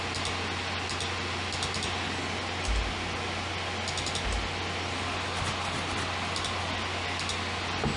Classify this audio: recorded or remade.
recorded